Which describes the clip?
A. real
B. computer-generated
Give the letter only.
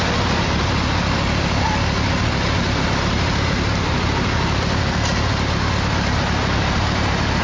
A